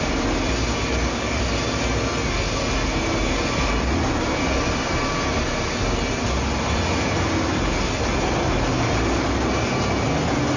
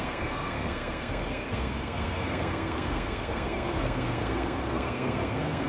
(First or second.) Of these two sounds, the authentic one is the first